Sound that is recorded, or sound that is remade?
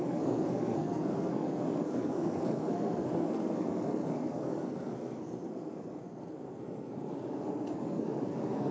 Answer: remade